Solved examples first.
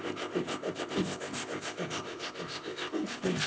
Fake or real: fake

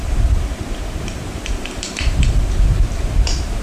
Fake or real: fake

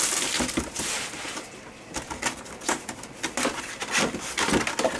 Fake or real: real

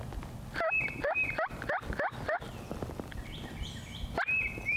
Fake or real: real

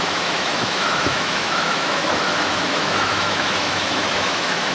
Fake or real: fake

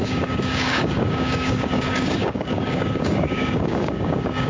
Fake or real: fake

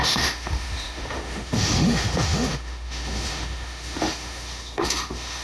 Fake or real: fake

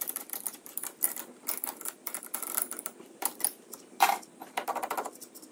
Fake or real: fake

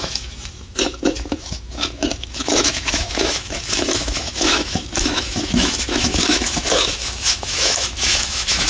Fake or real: fake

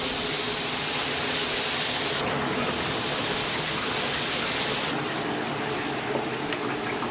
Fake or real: real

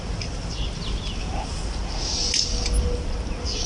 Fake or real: real